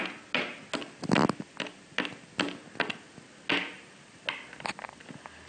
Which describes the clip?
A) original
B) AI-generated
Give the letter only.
A